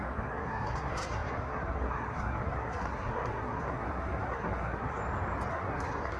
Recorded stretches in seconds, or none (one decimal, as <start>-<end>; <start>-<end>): 5.0-5.5